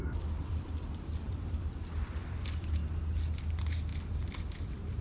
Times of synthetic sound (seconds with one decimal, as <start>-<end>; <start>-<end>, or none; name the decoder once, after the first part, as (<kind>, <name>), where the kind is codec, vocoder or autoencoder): 0.0-2.8 (vocoder, BigVGAN v2); 3.4-3.9; 4.6-5.0